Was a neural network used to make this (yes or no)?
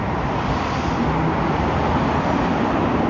no